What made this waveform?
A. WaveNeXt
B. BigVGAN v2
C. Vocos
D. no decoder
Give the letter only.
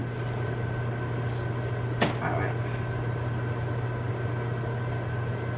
D